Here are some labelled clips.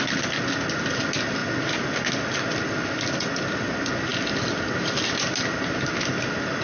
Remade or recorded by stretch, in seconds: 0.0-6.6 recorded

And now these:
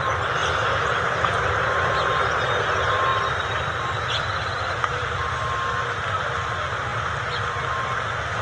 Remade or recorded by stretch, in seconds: 0.0-8.4 recorded

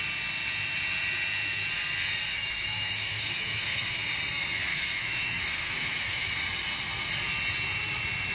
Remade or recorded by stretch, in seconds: 0.0-2.3 recorded; 2.3-4.0 remade; 4.0-4.7 recorded; 4.7-6.3 remade; 6.3-8.3 recorded

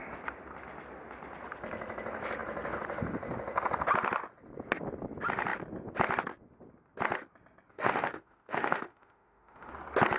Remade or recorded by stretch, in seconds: 0.0-7.7 recorded; 7.7-9.7 remade; 9.7-10.2 recorded

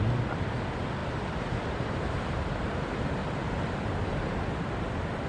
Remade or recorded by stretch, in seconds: 0.0-5.3 recorded

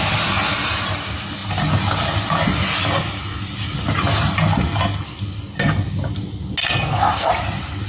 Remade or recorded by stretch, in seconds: 0.0-6.6 recorded; 6.6-7.3 remade; 7.3-7.9 recorded

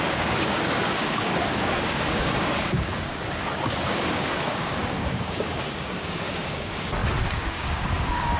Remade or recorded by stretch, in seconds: 0.0-8.4 remade

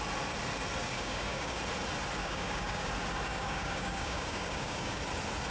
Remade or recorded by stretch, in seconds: 0.0-0.8 recorded; 0.8-1.6 remade; 1.6-2.2 recorded; 2.2-2.9 remade; 2.9-3.3 recorded; 3.3-5.0 remade; 5.0-5.5 recorded